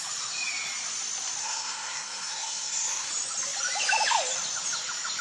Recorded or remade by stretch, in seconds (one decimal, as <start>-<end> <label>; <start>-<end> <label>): 0.0-1.4 recorded; 1.4-3.1 remade; 3.1-5.2 recorded